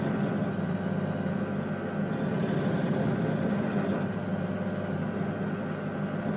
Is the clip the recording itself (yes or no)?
yes